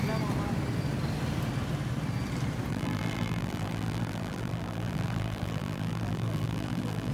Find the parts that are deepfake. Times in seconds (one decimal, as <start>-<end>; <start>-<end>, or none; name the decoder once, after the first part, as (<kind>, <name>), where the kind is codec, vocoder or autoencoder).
2.7-7.1 (vocoder, BigVGAN v2)